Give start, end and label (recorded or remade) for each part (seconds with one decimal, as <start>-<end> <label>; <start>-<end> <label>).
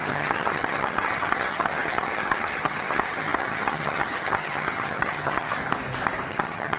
0.0-5.6 remade; 5.6-6.3 recorded; 6.3-6.8 remade